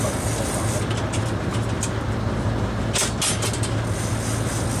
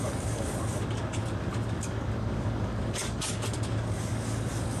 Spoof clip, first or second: second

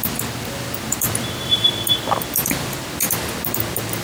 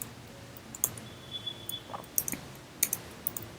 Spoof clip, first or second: first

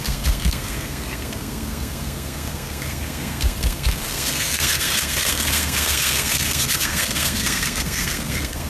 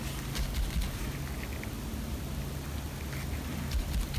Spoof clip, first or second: first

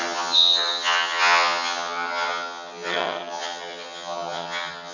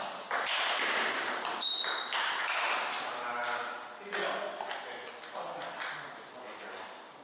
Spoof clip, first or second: first